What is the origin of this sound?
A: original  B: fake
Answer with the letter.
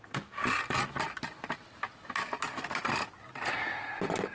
A